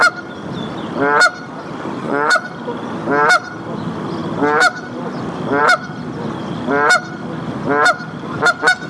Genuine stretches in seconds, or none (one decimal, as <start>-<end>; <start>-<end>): 0.0-2.0; 2.5-8.9